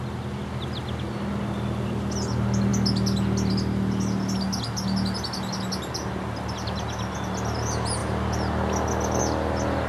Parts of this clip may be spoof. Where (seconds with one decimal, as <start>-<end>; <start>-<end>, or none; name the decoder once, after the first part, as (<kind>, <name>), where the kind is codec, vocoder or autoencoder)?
none